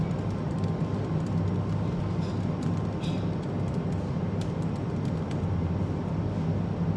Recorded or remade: recorded